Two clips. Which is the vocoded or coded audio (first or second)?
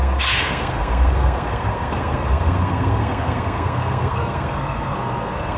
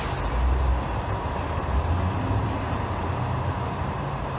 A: first